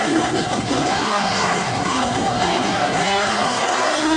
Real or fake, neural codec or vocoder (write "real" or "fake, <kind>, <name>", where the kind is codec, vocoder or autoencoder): fake, codec, SNAC